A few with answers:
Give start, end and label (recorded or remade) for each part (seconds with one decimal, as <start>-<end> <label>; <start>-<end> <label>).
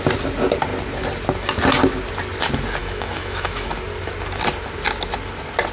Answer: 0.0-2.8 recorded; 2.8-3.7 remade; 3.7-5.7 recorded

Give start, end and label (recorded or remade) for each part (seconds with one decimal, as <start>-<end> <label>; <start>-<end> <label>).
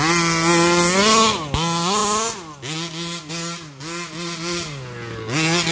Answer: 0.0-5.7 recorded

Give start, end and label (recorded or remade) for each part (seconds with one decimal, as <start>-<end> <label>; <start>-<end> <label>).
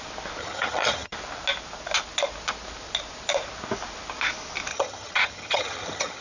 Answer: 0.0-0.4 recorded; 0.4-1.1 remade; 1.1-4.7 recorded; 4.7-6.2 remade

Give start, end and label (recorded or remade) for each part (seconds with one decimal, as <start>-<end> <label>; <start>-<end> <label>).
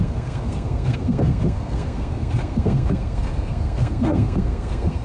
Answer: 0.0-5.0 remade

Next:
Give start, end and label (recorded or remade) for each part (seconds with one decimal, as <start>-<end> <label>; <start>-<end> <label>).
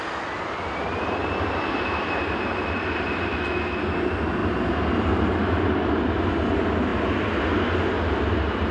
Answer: 0.0-3.3 recorded; 3.3-3.8 remade; 3.8-8.7 recorded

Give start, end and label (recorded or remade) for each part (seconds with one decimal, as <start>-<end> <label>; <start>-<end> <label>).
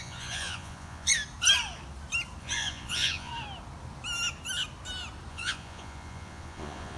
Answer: 0.0-1.1 remade; 1.1-2.4 recorded; 2.4-3.3 remade; 3.3-5.3 recorded; 5.3-7.0 remade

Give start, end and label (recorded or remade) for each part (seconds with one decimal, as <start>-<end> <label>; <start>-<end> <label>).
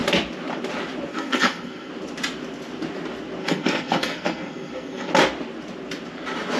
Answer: 0.0-1.1 recorded; 1.1-1.9 remade; 1.9-3.4 recorded; 3.4-5.1 remade; 5.1-6.6 recorded